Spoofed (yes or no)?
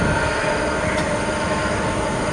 no